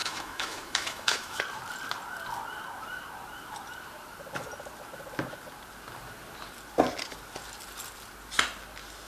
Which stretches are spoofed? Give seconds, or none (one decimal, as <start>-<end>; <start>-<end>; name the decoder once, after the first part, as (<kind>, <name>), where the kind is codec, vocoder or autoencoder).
0.0-1.4 (autoencoder, DAC-VAE)